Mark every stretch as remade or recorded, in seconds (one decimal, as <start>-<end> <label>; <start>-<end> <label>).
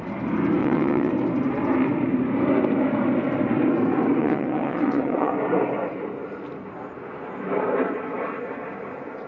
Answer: 0.0-0.6 recorded; 0.6-1.1 remade; 1.1-4.2 recorded; 4.2-5.3 remade; 5.3-9.3 recorded